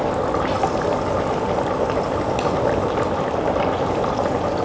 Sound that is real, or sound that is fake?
real